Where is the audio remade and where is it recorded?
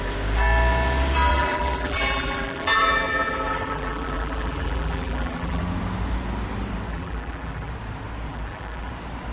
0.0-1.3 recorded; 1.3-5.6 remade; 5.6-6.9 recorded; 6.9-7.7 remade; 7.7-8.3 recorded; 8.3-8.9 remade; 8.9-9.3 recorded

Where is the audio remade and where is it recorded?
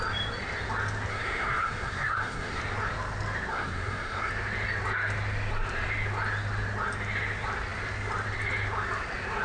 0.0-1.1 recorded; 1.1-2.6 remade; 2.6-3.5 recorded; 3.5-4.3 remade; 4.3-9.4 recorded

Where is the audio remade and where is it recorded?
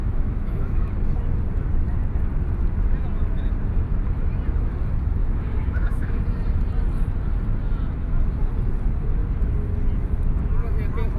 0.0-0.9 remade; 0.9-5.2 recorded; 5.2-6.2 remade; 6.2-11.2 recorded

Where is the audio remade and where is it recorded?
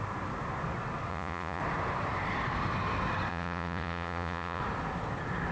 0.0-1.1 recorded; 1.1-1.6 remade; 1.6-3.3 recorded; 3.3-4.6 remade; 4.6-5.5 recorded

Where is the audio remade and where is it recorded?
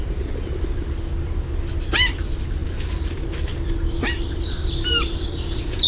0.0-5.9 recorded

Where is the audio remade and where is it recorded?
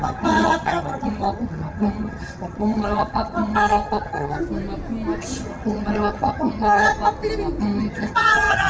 0.0-4.4 remade; 4.4-5.2 recorded; 5.2-6.9 remade; 6.9-7.6 recorded; 7.6-8.7 remade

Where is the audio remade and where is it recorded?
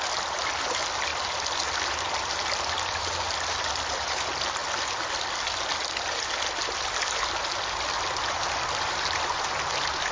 0.0-10.1 recorded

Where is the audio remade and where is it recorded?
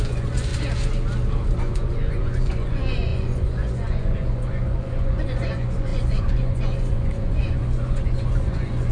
0.0-0.5 remade; 0.5-1.6 recorded; 1.6-8.9 remade